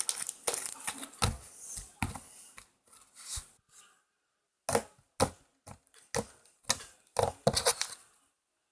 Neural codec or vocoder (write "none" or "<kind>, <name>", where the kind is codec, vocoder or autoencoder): none